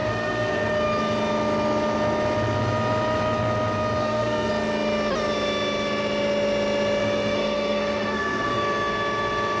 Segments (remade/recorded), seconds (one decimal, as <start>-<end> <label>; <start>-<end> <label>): 0.0-0.7 remade; 0.7-4.0 recorded; 4.0-4.5 remade; 4.5-7.0 recorded; 7.0-8.6 remade; 8.6-9.6 recorded